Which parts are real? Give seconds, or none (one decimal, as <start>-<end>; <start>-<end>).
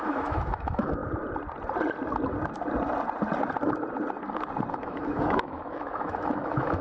1.0-4.7